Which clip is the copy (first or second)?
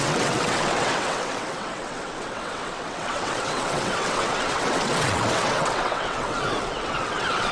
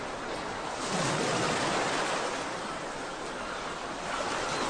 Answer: first